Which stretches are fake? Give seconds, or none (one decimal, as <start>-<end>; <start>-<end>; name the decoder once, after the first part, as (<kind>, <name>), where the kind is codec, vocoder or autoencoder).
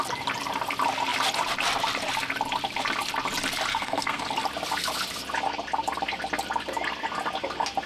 3.7-4.2 (codec, SNAC)